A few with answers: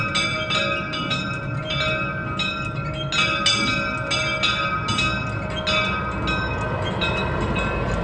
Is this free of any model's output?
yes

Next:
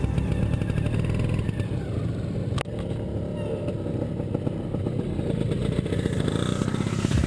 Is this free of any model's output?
yes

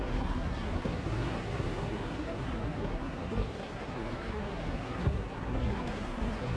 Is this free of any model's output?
no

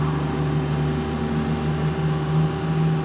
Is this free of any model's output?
yes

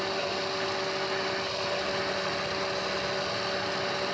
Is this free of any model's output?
yes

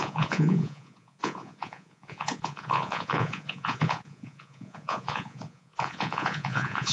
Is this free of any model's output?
no